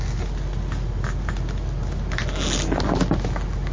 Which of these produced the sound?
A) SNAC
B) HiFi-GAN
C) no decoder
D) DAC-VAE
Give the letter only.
C